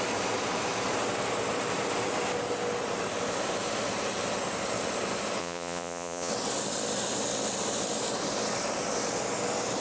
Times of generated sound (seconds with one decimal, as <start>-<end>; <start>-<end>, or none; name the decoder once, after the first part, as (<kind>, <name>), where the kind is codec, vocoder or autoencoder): 5.4-6.3 (vocoder, Vocos)